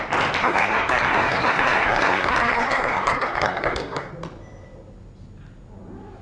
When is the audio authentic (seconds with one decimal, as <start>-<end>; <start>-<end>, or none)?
0.0-0.4; 4.1-6.2